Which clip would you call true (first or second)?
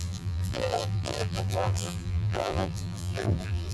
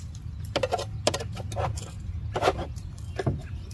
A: second